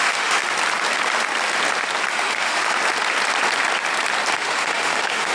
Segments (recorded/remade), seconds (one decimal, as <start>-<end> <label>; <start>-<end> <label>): 0.0-0.4 remade; 0.4-2.1 recorded; 2.1-2.6 remade; 2.6-4.3 recorded; 4.3-5.3 remade